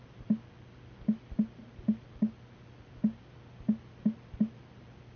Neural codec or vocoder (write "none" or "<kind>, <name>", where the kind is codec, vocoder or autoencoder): none